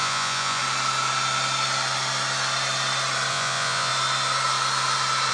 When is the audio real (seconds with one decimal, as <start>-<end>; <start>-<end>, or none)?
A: 0.6-3.3; 3.9-5.3